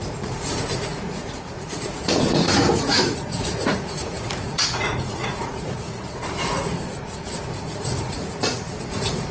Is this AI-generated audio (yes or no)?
yes